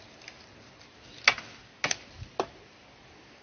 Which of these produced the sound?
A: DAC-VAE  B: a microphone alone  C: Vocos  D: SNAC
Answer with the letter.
B